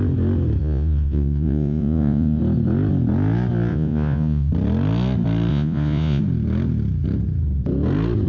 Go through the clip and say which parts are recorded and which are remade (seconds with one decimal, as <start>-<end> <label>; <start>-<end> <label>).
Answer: 0.0-0.6 recorded; 0.6-2.4 remade; 2.4-3.7 recorded; 3.7-4.5 remade; 4.5-5.5 recorded; 5.5-6.2 remade; 6.2-8.3 recorded